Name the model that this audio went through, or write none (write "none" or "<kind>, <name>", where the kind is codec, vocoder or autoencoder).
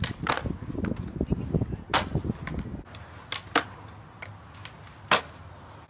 none